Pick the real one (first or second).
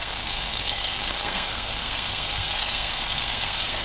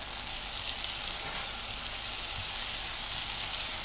second